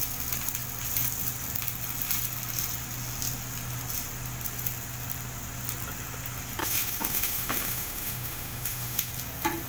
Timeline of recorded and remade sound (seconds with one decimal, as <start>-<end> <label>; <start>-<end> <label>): 0.0-6.6 recorded; 6.6-9.1 remade; 9.1-9.7 recorded